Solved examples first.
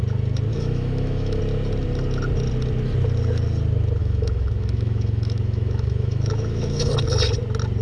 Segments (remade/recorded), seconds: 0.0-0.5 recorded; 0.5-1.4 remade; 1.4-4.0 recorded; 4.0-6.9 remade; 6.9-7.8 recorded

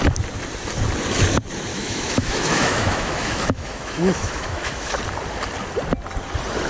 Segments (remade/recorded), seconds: 0.0-1.7 recorded; 1.7-5.0 remade; 5.0-6.7 recorded

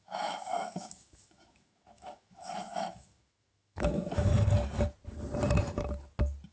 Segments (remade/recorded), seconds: 0.0-4.3 remade; 4.3-6.5 recorded

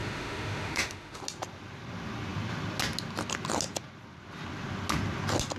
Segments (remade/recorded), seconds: 0.0-1.2 remade; 1.2-5.6 recorded

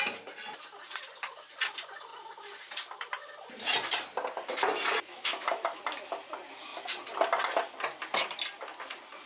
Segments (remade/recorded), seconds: 0.0-5.1 recorded; 5.1-5.8 remade; 5.8-9.3 recorded